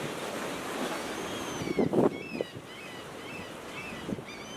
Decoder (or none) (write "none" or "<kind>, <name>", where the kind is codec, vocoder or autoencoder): none